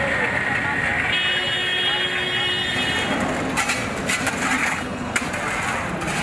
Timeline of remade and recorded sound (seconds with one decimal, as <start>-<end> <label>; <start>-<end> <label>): 0.0-4.6 recorded; 4.6-5.2 remade; 5.2-6.2 recorded